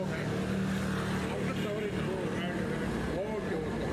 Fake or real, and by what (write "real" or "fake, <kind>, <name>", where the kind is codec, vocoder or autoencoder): real